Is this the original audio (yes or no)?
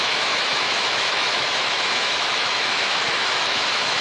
no